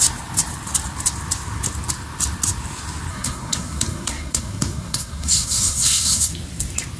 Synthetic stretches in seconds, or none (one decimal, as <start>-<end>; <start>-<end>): 3.1-6.3